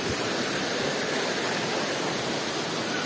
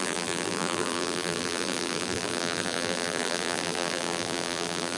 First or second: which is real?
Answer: first